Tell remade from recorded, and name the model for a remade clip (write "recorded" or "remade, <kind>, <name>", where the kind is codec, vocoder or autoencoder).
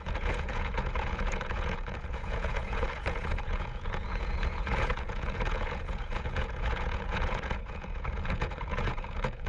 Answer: remade, vocoder, Vocos